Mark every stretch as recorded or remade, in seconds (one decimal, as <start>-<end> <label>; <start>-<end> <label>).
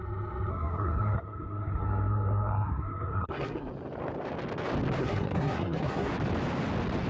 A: 0.0-0.5 recorded; 0.5-3.7 remade; 3.7-5.0 recorded; 5.0-6.1 remade; 6.1-7.1 recorded